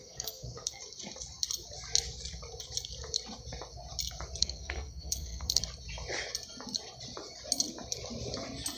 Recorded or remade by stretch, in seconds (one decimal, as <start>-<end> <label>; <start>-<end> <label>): 0.0-0.8 remade; 0.8-4.4 recorded; 4.4-5.6 remade; 5.6-8.8 recorded